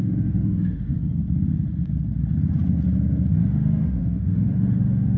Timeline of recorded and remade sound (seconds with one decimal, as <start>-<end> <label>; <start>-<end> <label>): 0.0-1.2 remade; 1.2-3.4 recorded; 3.4-5.2 remade